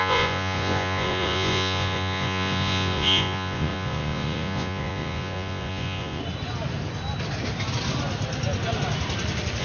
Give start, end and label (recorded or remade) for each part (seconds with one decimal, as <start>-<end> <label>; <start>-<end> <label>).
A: 0.0-6.2 remade; 6.2-9.6 recorded